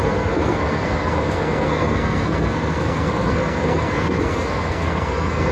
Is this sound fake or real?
fake